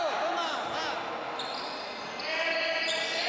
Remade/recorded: recorded